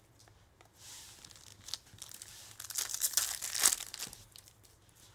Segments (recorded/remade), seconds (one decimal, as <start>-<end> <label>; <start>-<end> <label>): 0.0-5.1 recorded